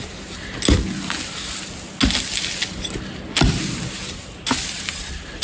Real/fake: real